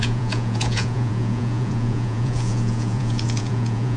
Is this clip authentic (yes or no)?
no